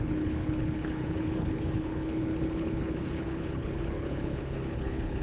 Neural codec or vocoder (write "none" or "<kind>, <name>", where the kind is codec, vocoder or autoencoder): codec, HILCodec